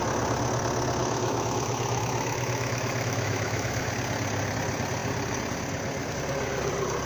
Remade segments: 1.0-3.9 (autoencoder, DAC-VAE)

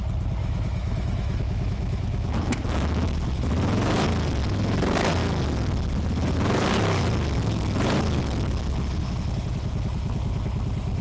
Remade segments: 0.4-3.2 (autoencoder, DAC-VAE)

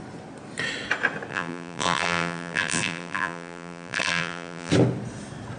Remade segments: 1.3-4.7 (vocoder, BigVGAN v2)

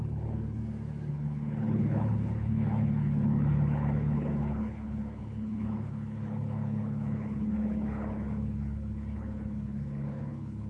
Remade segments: 0.0-0.6 (codec, HILCodec); 1.1-10.7

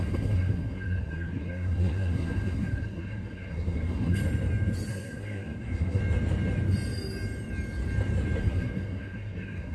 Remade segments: 0.0-4.2 (codec, SNAC); 4.9-6.0; 8.4-9.7